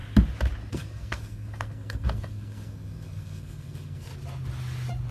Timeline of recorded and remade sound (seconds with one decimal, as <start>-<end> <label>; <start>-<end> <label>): 0.0-0.7 recorded; 0.7-4.1 remade; 4.1-5.1 recorded